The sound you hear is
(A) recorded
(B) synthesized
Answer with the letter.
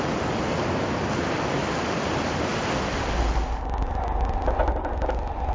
A